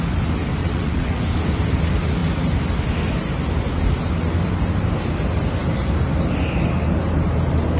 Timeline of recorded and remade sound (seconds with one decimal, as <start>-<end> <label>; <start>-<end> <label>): 0.0-0.6 recorded; 0.6-1.2 remade; 1.2-7.8 recorded